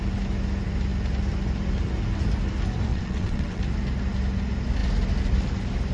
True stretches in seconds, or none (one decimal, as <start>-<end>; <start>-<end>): 0.0-2.9; 3.6-5.9